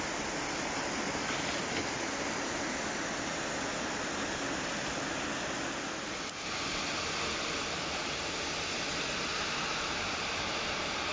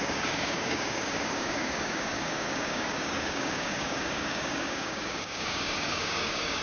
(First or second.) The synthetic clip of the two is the second